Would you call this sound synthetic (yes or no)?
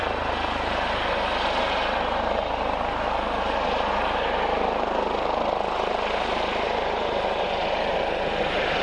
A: no